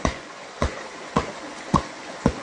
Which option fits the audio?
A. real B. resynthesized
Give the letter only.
B